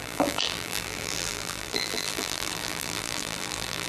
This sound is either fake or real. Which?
fake